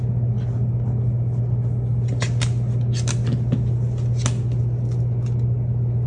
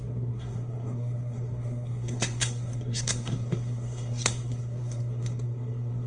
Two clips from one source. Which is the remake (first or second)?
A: second